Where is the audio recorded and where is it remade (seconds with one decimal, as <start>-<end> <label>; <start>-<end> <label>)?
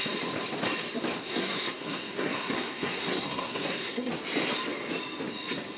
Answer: 0.0-1.2 recorded; 1.2-4.1 remade; 4.1-5.8 recorded